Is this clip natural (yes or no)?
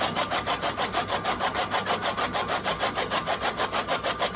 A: yes